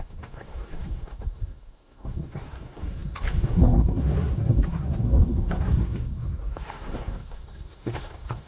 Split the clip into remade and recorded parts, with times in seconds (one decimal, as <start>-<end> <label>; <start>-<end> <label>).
0.0-8.5 remade